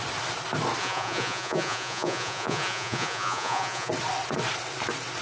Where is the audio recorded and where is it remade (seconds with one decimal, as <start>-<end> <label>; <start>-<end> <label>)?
0.0-0.8 recorded; 0.8-3.9 remade; 3.9-5.2 recorded